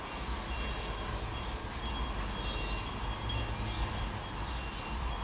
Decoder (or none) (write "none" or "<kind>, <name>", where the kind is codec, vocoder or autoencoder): none